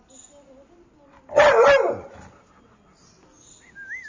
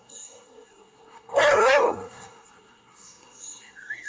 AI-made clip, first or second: second